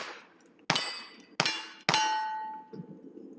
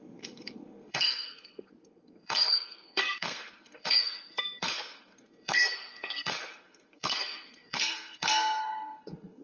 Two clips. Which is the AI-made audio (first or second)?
second